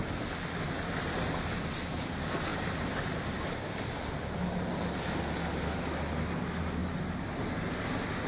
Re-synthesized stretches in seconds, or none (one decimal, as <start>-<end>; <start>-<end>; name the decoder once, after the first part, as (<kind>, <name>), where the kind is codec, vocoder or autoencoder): none